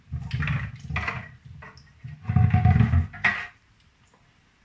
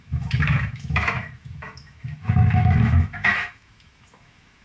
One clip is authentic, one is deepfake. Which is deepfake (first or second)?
second